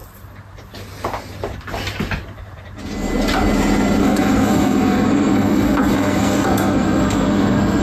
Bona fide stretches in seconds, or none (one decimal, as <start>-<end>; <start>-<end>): 0.0-4.0